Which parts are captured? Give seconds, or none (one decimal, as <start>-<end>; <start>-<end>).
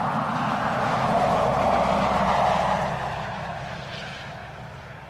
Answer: 0.0-5.1